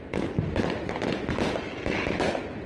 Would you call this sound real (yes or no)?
yes